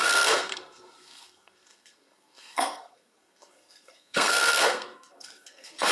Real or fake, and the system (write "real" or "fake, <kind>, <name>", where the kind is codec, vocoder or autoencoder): fake, codec, SNAC